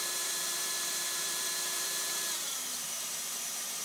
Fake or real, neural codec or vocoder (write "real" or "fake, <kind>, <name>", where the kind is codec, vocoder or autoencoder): fake, vocoder, BigVGAN v2